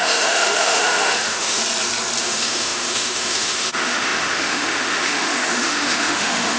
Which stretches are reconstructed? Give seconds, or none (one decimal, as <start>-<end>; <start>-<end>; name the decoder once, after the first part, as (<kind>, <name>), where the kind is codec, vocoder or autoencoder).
0.0-1.6 (autoencoder, DAC-VAE); 2.2-6.6